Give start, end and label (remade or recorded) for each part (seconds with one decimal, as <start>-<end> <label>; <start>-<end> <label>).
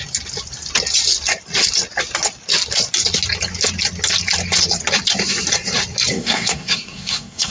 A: 0.0-6.1 recorded; 6.1-7.5 remade